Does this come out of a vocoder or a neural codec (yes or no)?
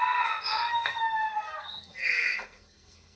yes